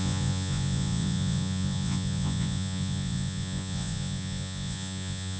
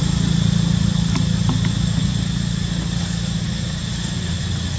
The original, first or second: second